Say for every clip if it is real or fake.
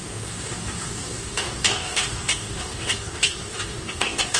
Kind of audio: fake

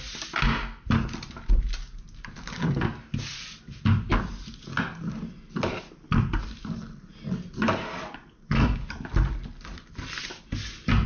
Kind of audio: real